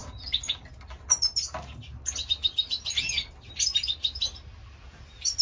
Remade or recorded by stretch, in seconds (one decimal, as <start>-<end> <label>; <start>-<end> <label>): 0.0-5.4 recorded